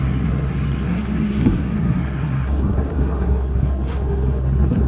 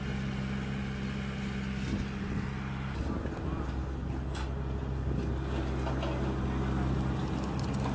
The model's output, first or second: first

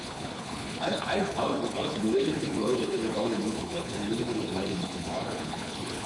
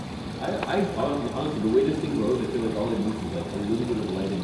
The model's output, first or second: first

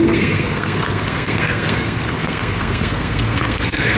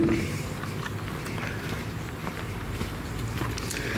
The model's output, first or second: first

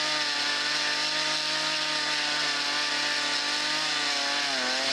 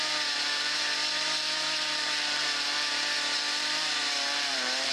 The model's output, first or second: second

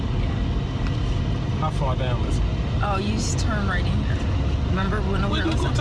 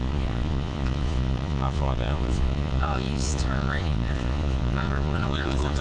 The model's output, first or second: second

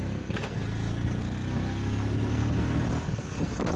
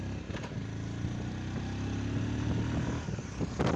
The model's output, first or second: first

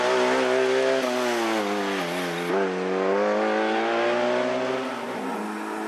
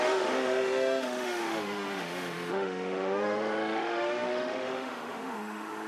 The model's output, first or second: second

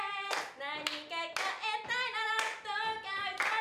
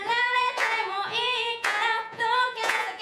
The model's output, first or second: second